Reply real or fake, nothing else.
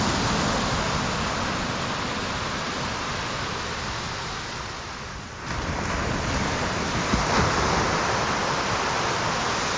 real